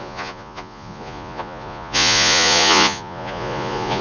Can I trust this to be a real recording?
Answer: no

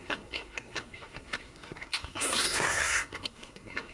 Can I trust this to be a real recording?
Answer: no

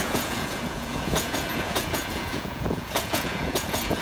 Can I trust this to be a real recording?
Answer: no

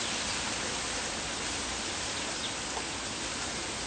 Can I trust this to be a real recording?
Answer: yes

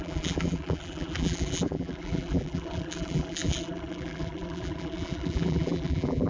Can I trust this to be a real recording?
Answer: no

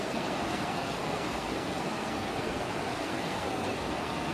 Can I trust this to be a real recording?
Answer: no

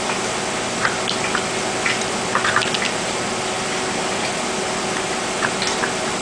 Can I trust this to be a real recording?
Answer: yes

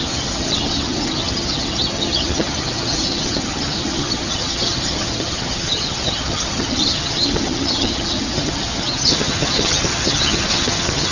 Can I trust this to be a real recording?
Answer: no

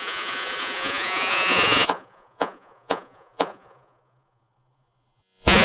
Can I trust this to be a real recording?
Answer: no